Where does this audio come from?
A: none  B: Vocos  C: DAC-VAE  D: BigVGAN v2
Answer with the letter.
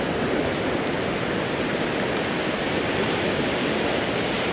A